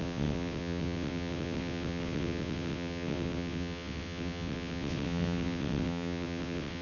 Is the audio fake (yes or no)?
yes